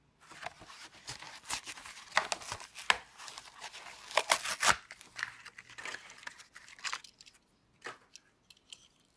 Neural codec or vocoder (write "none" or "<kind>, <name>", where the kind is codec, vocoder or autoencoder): none